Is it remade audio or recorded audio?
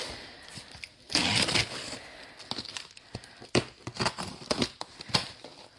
recorded